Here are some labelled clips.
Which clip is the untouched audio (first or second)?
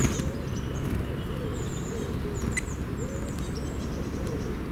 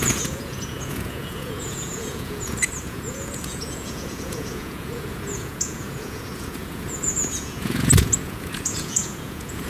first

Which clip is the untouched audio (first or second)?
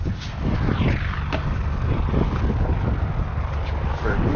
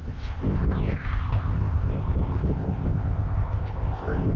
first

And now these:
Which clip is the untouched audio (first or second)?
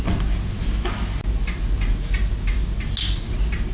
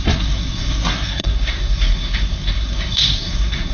first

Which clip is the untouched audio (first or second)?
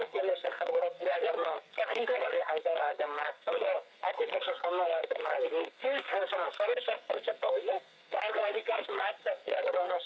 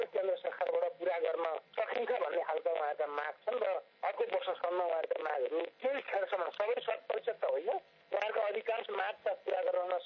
second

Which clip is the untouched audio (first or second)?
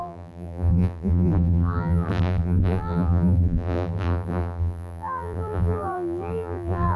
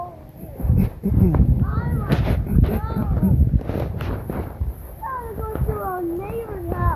second